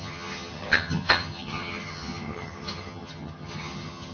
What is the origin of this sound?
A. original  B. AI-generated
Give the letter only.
B